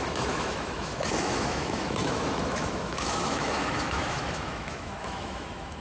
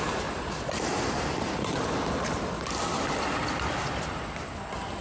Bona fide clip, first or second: second